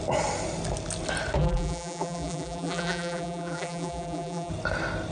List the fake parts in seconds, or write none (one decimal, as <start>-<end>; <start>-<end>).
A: 1.4-4.5